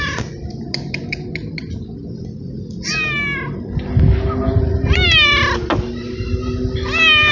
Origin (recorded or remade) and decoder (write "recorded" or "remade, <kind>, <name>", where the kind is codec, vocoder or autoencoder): recorded